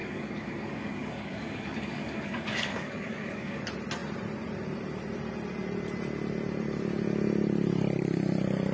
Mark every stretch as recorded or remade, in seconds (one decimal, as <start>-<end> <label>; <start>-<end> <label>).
0.0-3.6 remade; 3.6-8.7 recorded